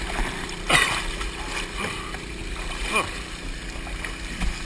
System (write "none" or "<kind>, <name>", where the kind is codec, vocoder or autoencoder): none